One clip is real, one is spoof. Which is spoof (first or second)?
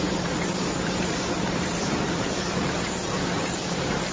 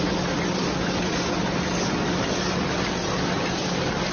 first